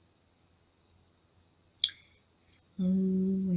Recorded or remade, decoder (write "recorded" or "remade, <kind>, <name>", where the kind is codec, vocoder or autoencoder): recorded